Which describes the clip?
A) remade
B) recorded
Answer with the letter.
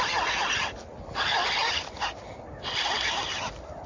B